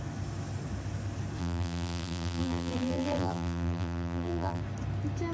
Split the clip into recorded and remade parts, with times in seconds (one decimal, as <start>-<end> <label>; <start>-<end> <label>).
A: 0.0-1.4 recorded; 1.4-4.6 remade; 4.6-5.3 recorded